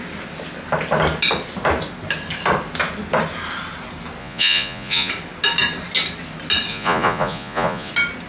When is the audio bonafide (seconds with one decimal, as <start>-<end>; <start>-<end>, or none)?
0.0-4.2; 5.1-6.7; 7.9-8.3